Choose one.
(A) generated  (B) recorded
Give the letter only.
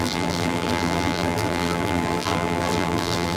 A